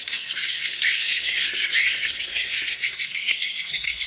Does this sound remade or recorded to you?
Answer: remade